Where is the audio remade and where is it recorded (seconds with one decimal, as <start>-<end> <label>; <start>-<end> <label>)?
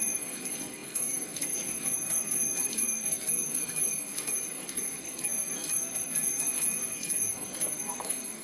0.0-8.4 remade